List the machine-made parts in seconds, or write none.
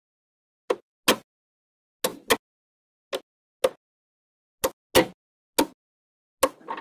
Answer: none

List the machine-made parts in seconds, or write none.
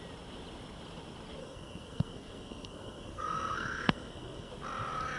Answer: 1.4-4.5 (codec, SNAC)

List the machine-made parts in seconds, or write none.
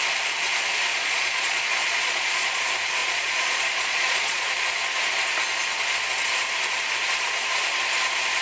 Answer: 0.9-2.6 (vocoder, Vocos); 3.0-4.6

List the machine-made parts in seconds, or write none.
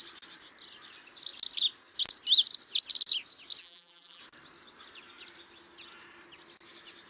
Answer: 3.6-4.2 (vocoder, BigVGAN v2)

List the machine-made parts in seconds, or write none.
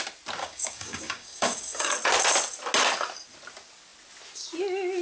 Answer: 0.4-1.9 (codec, DAC)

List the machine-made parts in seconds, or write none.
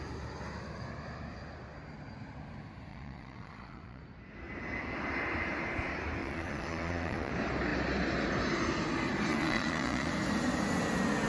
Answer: 2.9-4.0 (vocoder, Vocos); 6.2-7.3; 9.3-10.1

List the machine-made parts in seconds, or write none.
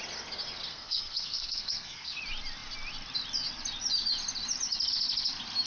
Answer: 0.7-2.2 (codec, SNAC)